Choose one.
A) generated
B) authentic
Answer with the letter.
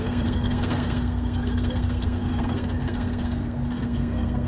A